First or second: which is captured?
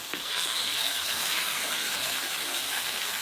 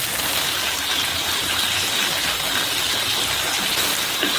second